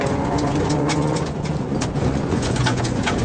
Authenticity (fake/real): fake